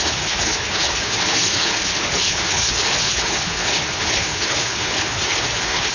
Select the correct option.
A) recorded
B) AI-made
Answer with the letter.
B